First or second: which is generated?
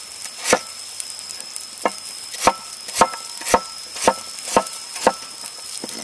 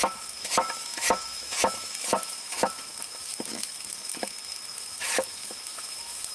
second